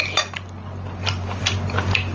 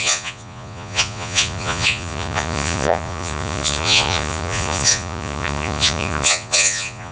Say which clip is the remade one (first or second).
second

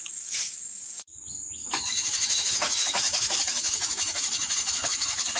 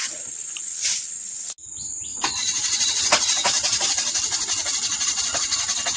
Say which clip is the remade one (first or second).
first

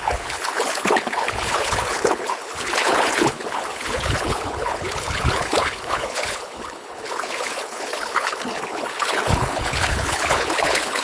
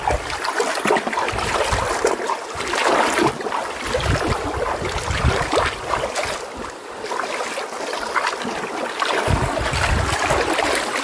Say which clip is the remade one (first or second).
first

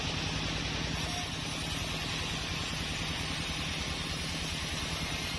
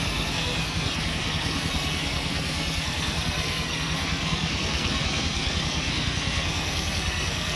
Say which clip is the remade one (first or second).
second